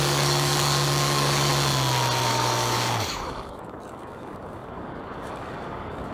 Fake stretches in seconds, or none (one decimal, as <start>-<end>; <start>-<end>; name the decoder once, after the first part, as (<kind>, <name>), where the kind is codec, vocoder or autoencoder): 0.0-1.5 (codec, DAC); 2.3-6.1